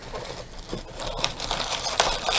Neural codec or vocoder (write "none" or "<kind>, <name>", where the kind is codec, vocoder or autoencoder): none